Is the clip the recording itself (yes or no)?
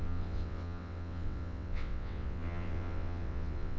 no